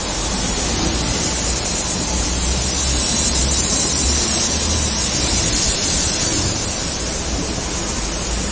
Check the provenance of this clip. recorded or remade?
remade